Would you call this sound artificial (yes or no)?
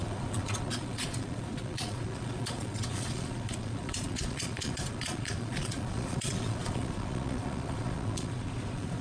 yes